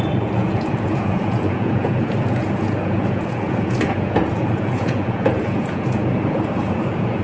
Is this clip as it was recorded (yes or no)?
no